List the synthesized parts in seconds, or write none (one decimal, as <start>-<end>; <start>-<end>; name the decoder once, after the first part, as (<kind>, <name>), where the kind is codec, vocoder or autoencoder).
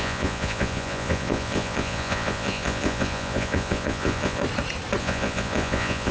0.0-4.4 (vocoder, Vocos); 5.0-6.1